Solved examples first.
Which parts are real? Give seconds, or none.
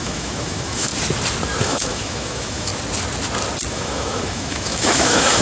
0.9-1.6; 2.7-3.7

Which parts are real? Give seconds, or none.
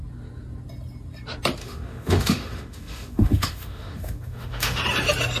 0.0-1.6; 4.8-5.4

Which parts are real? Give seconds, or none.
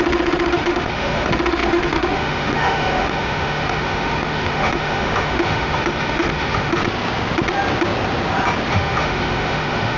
6.8-8.7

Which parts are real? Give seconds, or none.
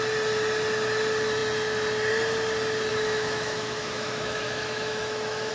0.0-2.9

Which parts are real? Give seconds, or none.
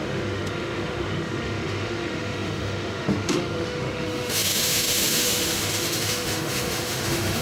none